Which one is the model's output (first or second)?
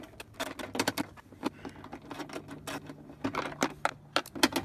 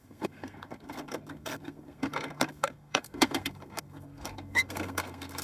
second